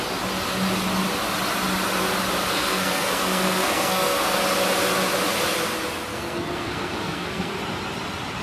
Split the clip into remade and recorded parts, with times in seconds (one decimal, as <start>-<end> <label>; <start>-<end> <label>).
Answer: 0.0-2.5 recorded; 2.5-4.4 remade; 4.4-6.1 recorded; 6.1-7.6 remade; 7.6-8.4 recorded